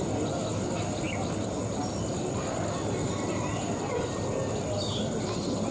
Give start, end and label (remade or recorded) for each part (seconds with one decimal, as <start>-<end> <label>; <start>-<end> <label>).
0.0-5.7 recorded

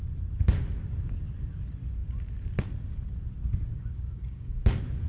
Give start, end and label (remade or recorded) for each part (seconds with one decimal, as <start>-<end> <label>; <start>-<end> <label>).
0.0-3.7 recorded; 3.7-4.6 remade; 4.6-5.1 recorded

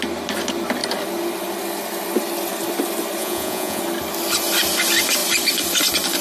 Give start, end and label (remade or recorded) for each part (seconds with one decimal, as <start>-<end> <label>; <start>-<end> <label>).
0.0-3.2 recorded; 3.2-3.8 remade; 3.8-6.2 recorded

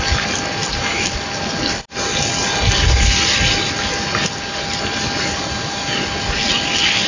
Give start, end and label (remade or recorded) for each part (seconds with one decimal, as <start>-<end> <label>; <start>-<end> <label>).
0.0-0.6 recorded; 0.6-1.6 remade; 1.6-7.1 recorded

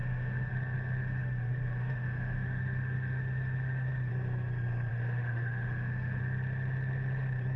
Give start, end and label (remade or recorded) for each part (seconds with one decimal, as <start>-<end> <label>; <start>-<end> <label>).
0.0-0.5 remade; 0.5-1.0 recorded; 1.0-4.1 remade; 4.1-4.9 recorded; 4.9-6.2 remade; 6.2-7.6 recorded

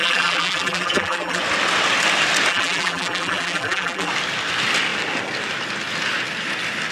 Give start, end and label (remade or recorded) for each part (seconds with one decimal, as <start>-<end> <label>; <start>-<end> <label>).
0.0-1.4 remade; 1.4-2.5 recorded; 2.5-4.1 remade; 4.1-6.9 recorded

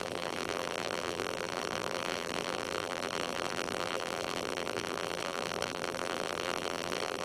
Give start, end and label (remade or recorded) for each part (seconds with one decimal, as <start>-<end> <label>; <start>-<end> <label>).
0.0-7.2 remade